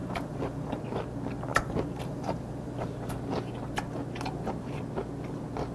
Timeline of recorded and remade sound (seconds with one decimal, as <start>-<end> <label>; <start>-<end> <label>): 0.0-0.8 remade; 0.8-1.5 recorded; 1.5-2.9 remade; 2.9-5.7 recorded